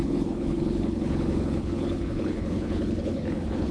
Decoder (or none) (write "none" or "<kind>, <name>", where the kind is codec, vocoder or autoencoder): codec, HILCodec